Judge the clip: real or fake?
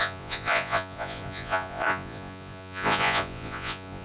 fake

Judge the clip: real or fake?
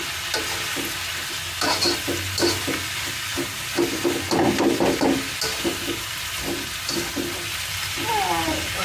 real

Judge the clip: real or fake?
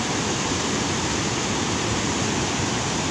real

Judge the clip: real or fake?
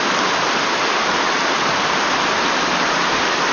real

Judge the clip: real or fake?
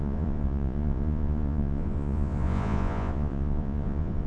fake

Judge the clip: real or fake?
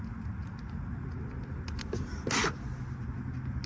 real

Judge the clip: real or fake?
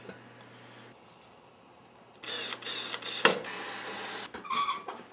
real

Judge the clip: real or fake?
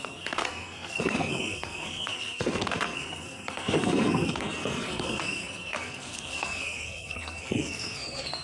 fake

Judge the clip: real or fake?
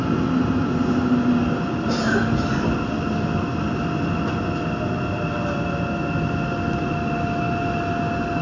real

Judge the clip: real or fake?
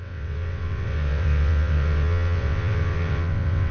fake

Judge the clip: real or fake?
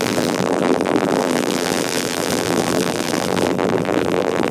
fake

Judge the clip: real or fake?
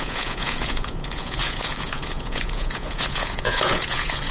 fake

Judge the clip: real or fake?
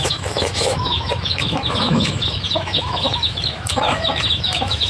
fake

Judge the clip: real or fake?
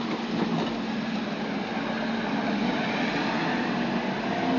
real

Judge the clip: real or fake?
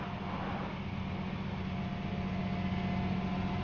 real